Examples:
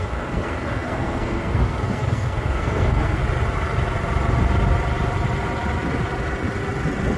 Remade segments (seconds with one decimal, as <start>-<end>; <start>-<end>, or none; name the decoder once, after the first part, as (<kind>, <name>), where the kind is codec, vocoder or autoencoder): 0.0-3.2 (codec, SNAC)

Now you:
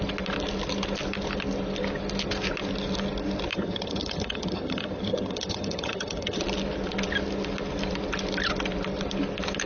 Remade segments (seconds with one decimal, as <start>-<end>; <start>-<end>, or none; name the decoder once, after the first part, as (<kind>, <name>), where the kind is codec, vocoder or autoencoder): 3.5-6.4 (vocoder, HiFi-GAN)

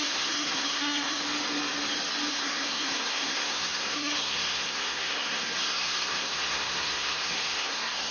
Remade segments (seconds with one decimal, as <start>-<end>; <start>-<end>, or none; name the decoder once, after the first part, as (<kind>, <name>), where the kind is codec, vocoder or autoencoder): 0.0-1.2 (codec, SNAC); 2.3-8.1